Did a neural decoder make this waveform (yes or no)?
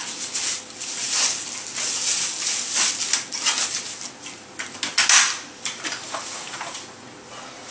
no